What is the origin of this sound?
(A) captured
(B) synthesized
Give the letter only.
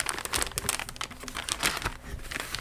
A